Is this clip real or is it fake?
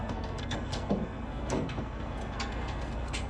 fake